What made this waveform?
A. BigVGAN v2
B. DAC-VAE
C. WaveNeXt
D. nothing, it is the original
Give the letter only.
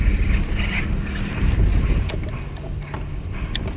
D